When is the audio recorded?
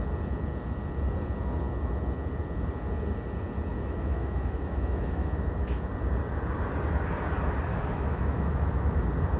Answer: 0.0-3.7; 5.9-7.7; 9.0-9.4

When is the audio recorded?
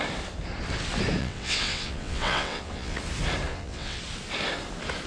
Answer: 0.0-1.2; 3.0-3.5; 4.0-5.1